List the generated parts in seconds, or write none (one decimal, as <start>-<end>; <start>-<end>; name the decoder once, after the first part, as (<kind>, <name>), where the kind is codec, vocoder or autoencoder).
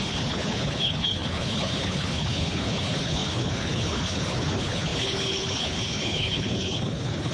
0.0-7.3 (codec, HILCodec)